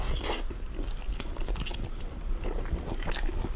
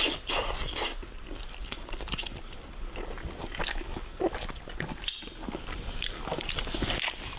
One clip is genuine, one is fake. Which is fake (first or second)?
second